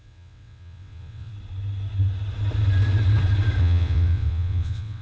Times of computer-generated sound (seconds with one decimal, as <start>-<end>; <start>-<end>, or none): 0.0-1.3; 3.6-5.0